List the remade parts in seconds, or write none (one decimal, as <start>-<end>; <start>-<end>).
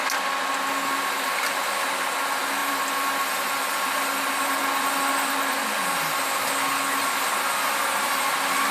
2.6-3.7